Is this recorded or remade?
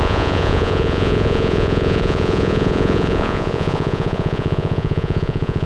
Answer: remade